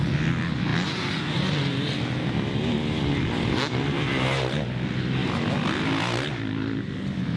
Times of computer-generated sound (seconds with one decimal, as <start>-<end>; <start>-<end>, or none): none